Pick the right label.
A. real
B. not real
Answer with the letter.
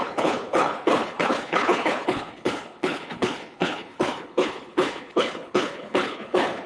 B